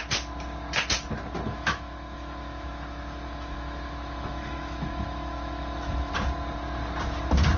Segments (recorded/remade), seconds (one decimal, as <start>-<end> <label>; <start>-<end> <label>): 0.0-1.5 recorded; 1.5-6.1 remade; 6.1-7.6 recorded